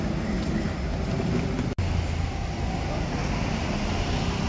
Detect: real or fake real